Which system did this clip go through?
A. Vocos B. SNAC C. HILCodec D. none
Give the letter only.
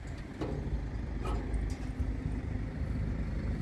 D